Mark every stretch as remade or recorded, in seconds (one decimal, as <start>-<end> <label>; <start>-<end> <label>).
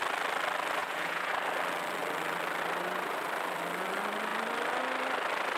0.0-0.8 recorded; 0.8-1.3 remade; 1.3-5.6 recorded